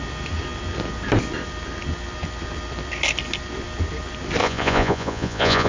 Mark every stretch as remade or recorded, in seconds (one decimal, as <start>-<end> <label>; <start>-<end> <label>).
0.0-4.4 recorded; 4.4-5.7 remade